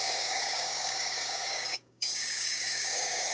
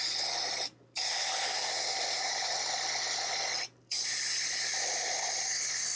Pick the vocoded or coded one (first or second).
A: first